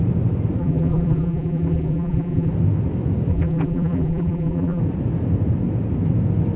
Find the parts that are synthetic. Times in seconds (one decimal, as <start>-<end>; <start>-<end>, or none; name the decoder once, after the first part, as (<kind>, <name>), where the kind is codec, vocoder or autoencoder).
0.6-2.5 (vocoder, BigVGAN v2); 3.3-4.8